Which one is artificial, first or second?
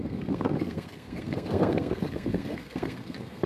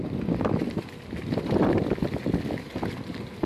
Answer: first